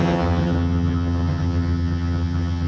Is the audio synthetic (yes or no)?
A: yes